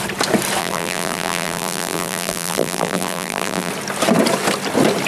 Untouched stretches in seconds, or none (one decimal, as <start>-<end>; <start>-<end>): 0.0-0.6; 3.7-5.1